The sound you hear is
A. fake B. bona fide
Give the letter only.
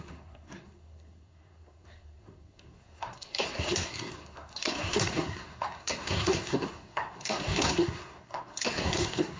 A